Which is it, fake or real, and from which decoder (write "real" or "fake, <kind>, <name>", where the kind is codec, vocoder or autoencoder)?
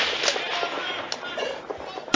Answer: real